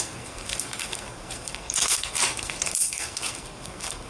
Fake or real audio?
fake